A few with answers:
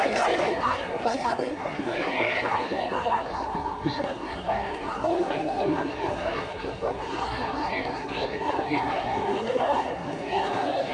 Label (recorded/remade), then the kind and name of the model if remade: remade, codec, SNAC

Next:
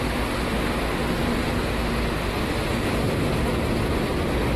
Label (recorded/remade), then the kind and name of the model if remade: recorded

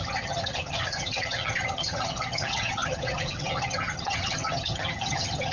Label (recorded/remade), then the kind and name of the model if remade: remade, vocoder, HiFi-GAN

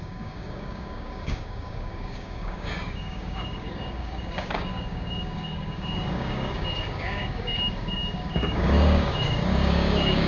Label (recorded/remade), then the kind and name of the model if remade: remade, codec, DAC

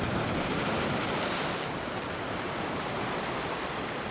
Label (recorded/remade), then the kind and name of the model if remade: recorded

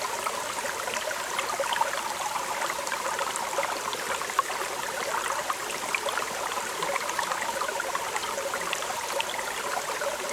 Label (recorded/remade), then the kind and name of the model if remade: recorded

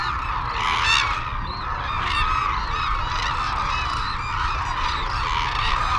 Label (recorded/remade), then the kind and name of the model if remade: recorded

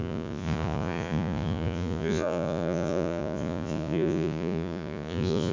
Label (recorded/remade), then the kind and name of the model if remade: remade, vocoder, Vocos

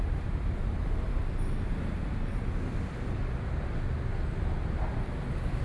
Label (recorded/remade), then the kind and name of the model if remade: recorded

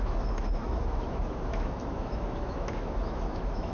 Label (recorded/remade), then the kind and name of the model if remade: remade, autoencoder, DAC-VAE